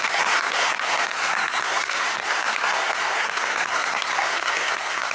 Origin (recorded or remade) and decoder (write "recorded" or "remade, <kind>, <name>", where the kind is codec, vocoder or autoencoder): remade, codec, SNAC